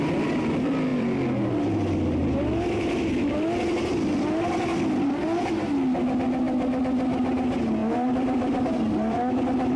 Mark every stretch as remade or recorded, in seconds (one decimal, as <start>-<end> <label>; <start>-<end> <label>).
0.0-0.9 recorded; 0.9-1.5 remade; 1.5-2.2 recorded; 2.2-3.1 remade; 3.1-7.8 recorded; 7.8-9.4 remade; 9.4-9.8 recorded